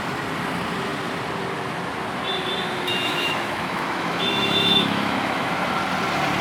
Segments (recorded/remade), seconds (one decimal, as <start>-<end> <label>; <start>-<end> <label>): 0.0-2.9 recorded; 2.9-5.5 remade; 5.5-6.4 recorded